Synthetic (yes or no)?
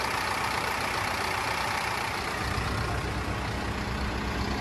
no